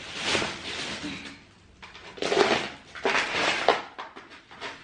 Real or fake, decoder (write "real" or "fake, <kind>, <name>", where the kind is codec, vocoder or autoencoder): real